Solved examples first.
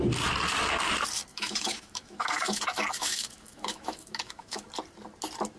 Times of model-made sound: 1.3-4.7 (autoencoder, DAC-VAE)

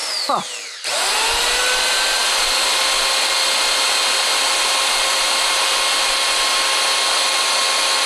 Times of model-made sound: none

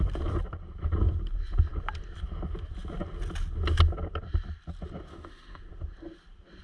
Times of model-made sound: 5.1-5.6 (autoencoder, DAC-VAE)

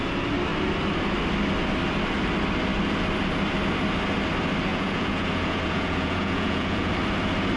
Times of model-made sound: 4.7-6.9 (vocoder, Vocos)